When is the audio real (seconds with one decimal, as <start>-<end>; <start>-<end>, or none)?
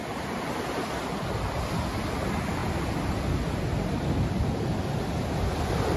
0.0-6.0